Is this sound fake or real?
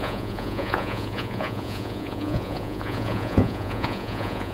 fake